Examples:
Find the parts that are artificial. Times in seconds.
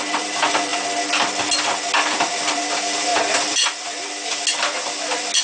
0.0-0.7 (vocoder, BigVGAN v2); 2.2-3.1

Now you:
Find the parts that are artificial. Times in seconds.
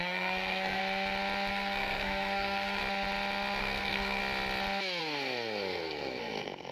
0.0-0.8 (codec, SNAC); 1.5-2.8; 3.6-4.2; 5.0-6.7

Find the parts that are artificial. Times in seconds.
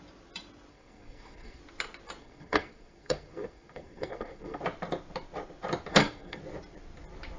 0.7-1.6 (codec, SNAC); 2.2-4.6; 5.9-6.4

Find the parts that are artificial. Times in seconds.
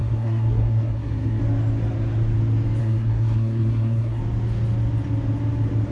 0.0-1.4 (codec, SNAC); 2.8-4.2